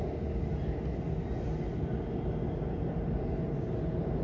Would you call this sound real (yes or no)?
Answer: yes